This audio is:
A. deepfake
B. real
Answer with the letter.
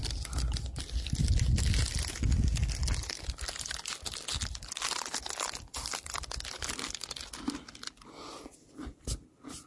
B